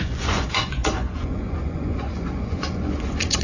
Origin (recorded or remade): remade